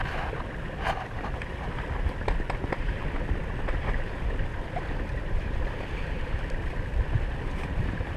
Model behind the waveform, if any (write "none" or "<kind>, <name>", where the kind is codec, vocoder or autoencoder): none